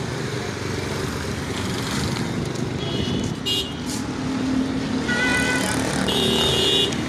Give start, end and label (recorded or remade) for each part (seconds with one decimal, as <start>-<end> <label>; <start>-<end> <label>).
0.0-7.1 recorded